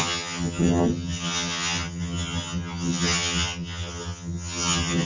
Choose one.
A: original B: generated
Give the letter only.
B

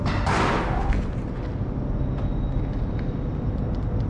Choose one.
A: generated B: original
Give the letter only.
B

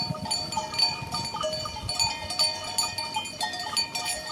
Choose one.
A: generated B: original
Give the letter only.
B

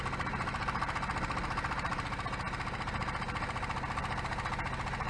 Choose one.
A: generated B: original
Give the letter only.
B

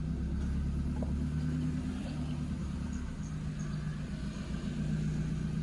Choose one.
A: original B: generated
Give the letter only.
A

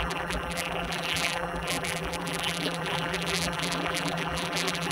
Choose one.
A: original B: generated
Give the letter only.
B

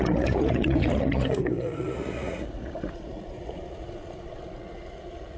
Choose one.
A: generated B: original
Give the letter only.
A